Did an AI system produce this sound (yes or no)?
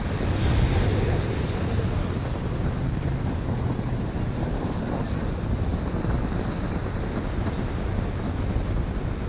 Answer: no